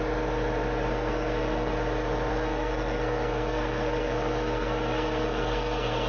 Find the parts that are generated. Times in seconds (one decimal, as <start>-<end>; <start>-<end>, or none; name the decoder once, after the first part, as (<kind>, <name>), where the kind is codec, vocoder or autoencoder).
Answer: 0.9-1.7 (codec, SNAC); 2.3-6.1